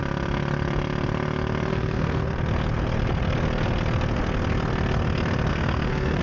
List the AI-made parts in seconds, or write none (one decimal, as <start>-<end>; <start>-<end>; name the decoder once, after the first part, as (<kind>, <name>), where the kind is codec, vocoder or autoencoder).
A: 1.7-2.3 (codec, SNAC); 5.5-6.2